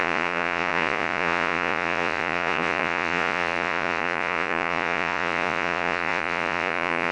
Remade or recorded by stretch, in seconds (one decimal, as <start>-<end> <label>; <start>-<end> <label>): 0.0-7.1 remade